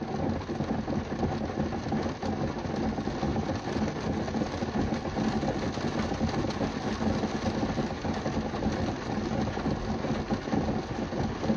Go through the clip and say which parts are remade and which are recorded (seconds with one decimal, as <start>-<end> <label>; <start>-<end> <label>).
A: 0.0-11.6 recorded